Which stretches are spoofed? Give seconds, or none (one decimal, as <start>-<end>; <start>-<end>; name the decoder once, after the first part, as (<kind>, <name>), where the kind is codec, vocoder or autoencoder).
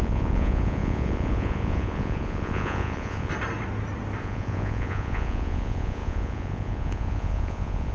0.0-3.3 (vocoder, Vocos); 4.2-7.9